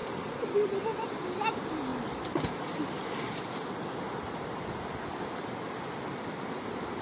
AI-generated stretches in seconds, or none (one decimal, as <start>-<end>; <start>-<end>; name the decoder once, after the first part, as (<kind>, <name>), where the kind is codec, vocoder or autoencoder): none